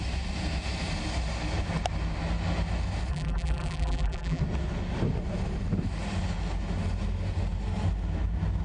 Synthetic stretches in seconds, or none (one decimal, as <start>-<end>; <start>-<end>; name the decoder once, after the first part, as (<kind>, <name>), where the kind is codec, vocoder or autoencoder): 3.1-4.4 (vocoder, BigVGAN v2)